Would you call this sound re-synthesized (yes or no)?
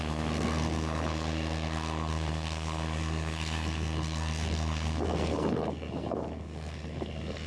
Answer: yes